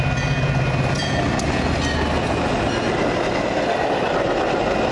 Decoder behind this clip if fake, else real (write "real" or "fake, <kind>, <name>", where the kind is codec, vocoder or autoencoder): real